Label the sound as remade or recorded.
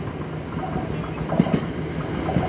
recorded